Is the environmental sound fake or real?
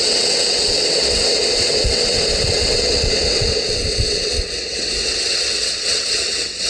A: fake